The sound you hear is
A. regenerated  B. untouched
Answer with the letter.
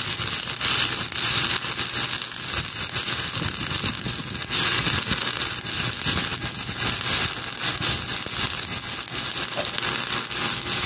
B